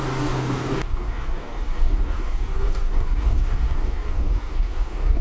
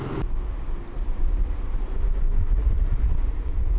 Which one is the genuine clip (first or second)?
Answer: second